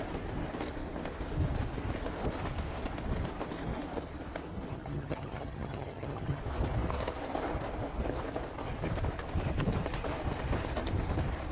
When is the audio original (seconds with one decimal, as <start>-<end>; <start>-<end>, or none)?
0.0-4.7; 6.4-11.5